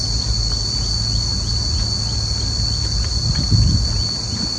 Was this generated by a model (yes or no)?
no